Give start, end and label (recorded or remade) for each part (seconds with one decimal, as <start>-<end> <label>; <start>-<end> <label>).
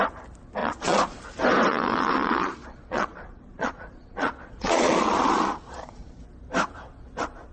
0.0-0.6 recorded; 0.6-1.2 remade; 1.2-1.7 recorded; 1.7-6.2 remade; 6.2-7.5 recorded